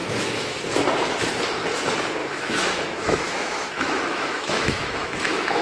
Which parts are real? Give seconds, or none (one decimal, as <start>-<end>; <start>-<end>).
0.6-2.2